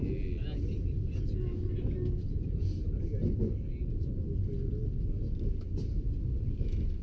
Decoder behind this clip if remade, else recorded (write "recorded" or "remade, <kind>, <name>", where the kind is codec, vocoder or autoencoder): recorded